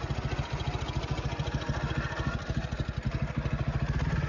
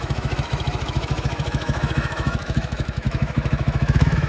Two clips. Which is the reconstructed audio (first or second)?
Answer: second